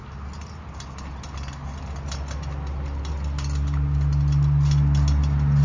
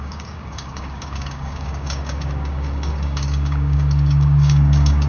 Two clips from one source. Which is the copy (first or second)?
second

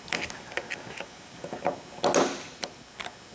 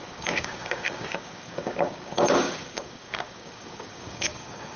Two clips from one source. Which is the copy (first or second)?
second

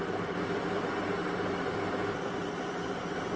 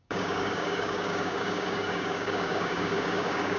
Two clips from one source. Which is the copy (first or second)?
second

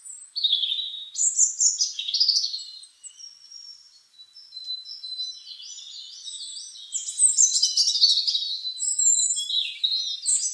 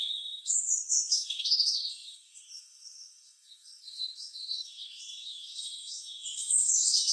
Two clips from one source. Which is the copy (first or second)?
second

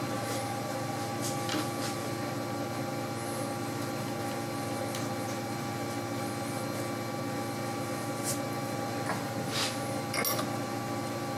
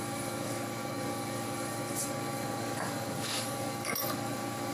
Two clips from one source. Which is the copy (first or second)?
second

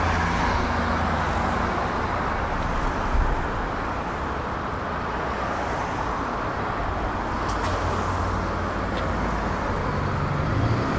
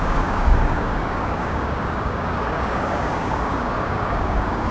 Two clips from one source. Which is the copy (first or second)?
second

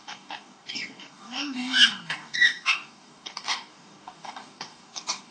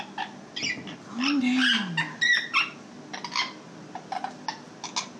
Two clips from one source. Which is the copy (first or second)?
first